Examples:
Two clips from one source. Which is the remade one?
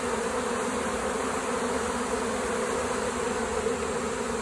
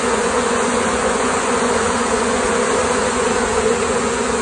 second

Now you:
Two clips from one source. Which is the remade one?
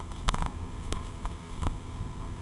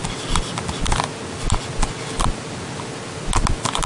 first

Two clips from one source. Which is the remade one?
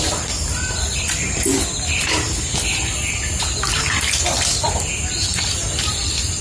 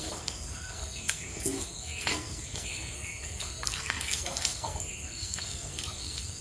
second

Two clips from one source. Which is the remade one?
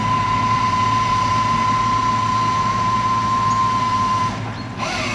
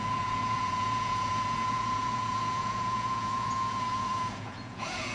second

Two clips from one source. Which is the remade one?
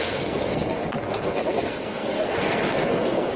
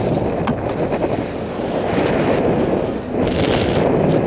first